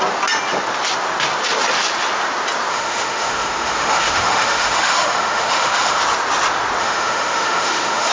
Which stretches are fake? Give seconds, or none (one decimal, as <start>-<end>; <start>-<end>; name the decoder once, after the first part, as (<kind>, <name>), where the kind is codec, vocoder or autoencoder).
2.7-6.0 (autoencoder, DAC-VAE); 6.8-8.1